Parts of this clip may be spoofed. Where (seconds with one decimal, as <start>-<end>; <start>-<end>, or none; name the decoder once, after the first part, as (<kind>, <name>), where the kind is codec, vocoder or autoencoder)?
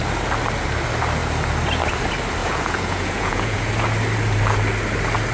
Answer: 2.4-3.7 (vocoder, Vocos)